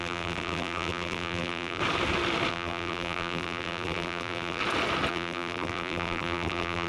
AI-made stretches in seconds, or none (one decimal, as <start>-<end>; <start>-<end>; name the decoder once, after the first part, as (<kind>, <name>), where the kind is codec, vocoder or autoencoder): 0.0-1.8 (vocoder, BigVGAN v2); 2.5-4.6; 5.1-6.9